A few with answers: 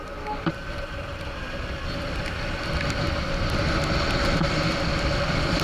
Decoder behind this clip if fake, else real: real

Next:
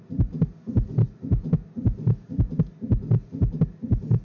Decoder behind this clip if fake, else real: real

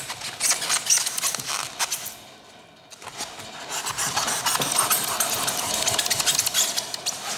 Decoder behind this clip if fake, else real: real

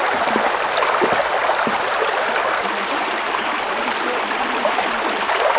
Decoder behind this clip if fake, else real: real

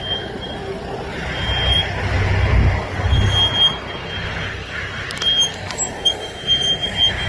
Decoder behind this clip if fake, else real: real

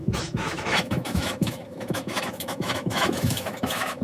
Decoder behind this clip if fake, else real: fake, autoencoder, DAC-VAE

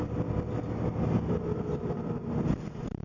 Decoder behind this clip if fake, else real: real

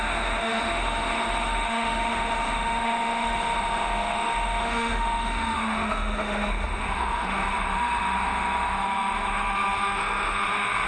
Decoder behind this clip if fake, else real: fake, autoencoder, DAC-VAE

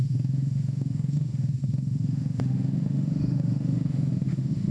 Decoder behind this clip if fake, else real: fake, autoencoder, DAC-VAE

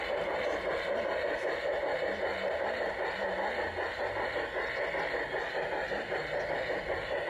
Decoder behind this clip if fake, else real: real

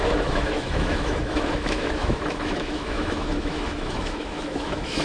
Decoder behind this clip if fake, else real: fake, autoencoder, DAC-VAE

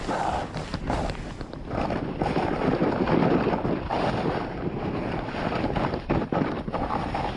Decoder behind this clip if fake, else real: real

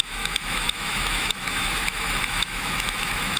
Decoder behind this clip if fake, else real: fake, autoencoder, DAC-VAE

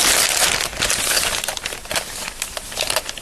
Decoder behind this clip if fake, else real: real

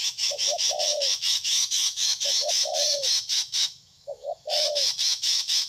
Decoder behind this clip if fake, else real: fake, autoencoder, DAC-VAE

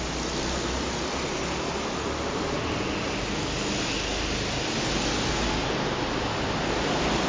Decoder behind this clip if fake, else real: real